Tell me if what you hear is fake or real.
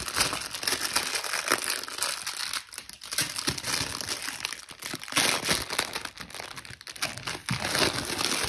real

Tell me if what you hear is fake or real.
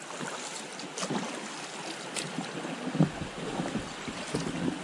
real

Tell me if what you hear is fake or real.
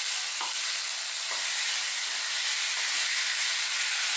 real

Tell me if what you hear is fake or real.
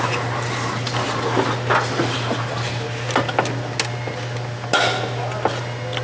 real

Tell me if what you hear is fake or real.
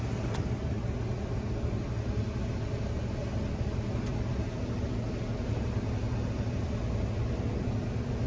real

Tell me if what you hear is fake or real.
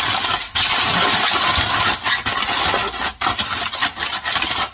real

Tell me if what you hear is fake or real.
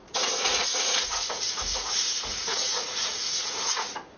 fake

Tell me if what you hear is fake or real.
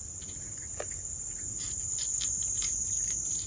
fake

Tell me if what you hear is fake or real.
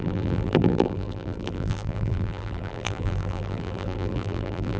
fake